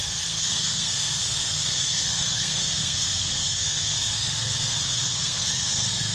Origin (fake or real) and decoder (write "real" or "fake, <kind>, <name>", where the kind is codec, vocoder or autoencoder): fake, codec, SNAC